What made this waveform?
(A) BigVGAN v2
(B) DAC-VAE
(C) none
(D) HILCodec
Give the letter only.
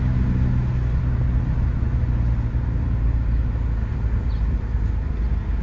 C